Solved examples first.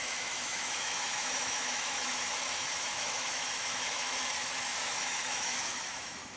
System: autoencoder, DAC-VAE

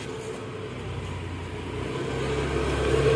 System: none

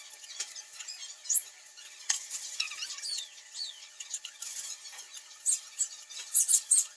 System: vocoder, Vocos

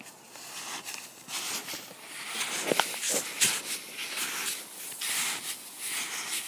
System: none